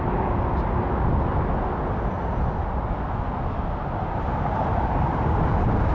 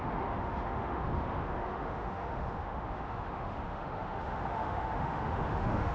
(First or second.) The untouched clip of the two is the first